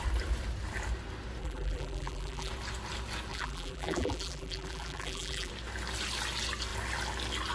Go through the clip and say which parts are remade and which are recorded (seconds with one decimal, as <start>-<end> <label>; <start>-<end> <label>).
0.0-1.4 recorded; 1.4-2.5 remade; 2.5-3.3 recorded; 3.3-5.5 remade; 5.5-7.5 recorded